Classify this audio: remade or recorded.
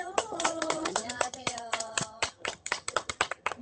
remade